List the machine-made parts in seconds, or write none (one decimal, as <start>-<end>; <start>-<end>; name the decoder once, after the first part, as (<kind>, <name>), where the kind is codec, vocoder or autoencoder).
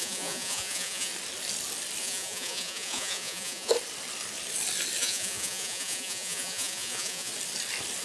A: 0.0-1.1 (vocoder, Vocos); 2.0-3.7; 5.0-7.3